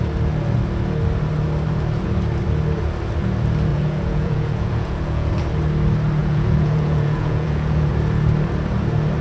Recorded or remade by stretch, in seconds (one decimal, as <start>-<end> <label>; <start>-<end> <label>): 0.0-3.7 recorded; 3.7-5.3 remade; 5.3-6.2 recorded; 6.2-7.9 remade; 7.9-9.2 recorded